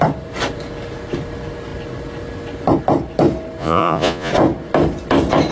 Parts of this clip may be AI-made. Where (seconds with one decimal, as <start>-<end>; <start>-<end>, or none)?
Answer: 3.6-4.3